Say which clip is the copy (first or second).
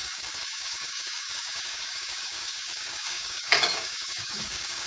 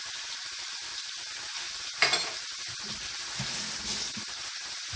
first